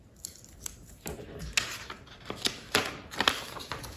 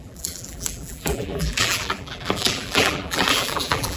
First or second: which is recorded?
first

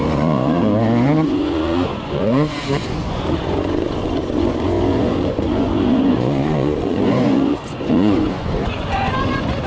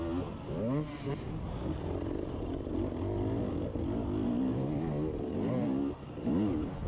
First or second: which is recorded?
second